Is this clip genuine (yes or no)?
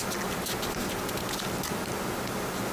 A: yes